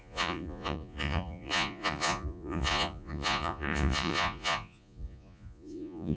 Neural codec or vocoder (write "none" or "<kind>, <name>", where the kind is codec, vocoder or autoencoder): vocoder, Vocos